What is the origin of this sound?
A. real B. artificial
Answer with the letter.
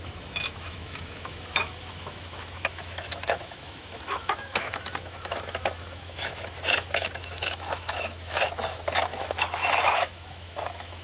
B